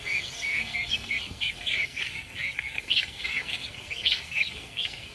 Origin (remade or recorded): remade